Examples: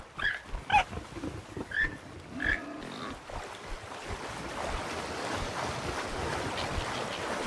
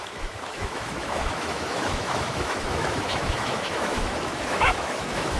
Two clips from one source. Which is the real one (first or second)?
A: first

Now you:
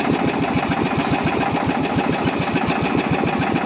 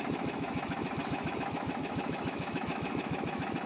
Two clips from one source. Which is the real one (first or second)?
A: first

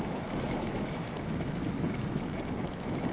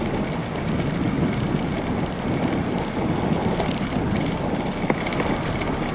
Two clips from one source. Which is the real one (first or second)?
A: second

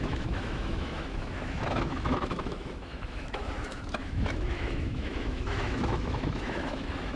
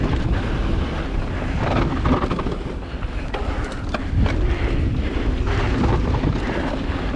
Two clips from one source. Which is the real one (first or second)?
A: second